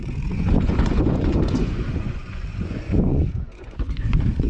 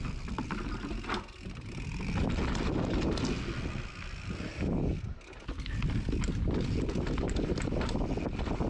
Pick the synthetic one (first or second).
first